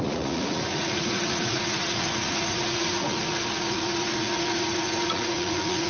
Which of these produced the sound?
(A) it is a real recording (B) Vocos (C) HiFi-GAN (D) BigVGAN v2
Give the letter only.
B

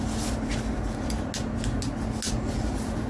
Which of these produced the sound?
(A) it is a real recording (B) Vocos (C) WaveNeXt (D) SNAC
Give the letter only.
A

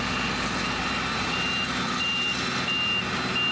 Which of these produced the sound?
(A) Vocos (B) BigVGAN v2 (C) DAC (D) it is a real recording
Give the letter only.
D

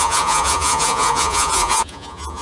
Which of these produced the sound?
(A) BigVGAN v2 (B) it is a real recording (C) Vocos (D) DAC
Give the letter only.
C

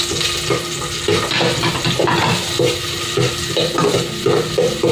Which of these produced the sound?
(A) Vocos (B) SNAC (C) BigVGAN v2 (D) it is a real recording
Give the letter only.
D